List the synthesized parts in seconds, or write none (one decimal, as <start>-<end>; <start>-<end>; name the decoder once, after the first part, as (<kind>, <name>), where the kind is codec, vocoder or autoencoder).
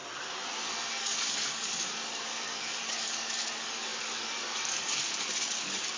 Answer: 0.9-6.0 (codec, DAC)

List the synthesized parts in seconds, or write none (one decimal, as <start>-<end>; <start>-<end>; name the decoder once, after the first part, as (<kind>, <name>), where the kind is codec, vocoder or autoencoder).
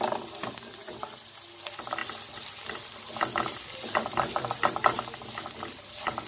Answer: none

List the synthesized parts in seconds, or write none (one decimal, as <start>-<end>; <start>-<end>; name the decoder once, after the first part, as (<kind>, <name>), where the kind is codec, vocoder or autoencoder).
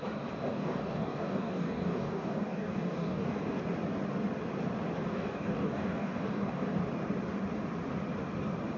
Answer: 0.5-3.6 (codec, DAC); 5.1-6.8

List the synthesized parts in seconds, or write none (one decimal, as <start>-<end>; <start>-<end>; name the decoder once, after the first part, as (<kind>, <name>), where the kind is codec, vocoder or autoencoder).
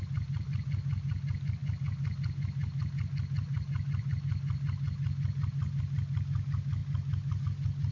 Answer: none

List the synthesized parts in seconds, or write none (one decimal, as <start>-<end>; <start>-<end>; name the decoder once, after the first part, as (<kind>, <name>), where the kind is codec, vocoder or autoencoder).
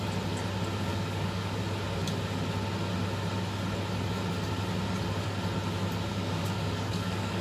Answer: 0.9-1.6 (codec, DAC); 6.1-7.4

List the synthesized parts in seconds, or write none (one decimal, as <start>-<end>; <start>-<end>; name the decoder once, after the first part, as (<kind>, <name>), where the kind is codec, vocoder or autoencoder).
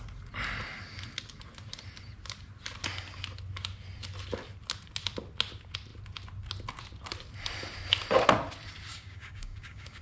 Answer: 8.9-10.0 (codec, DAC)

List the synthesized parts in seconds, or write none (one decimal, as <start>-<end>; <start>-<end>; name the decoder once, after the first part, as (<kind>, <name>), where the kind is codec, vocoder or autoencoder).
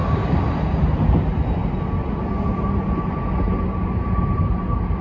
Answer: none